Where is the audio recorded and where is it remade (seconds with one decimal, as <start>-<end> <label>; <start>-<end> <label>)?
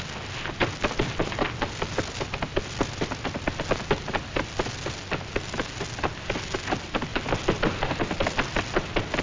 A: 0.0-9.2 recorded